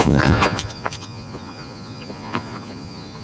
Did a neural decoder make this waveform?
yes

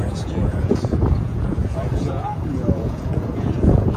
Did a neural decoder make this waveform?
yes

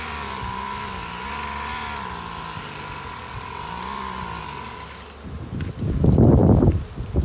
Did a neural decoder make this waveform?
no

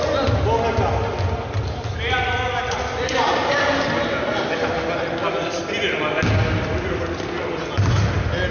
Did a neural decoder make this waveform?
no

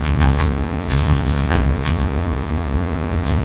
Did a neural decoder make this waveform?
yes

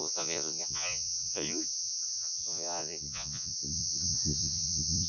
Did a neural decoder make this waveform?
yes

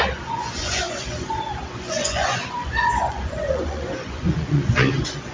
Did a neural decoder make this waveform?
yes